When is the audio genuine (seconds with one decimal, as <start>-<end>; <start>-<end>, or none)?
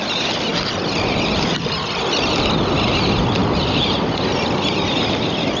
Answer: 0.0-5.6